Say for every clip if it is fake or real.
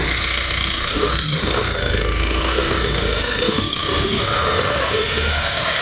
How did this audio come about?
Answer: fake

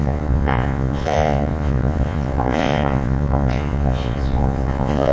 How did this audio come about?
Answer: fake